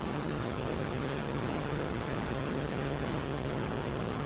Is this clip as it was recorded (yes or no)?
no